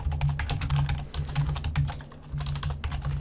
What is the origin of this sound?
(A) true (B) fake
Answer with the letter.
A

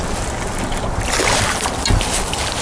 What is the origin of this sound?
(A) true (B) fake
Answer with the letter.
A